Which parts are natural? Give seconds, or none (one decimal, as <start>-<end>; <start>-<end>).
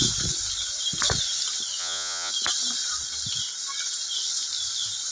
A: 0.0-1.8; 2.3-5.1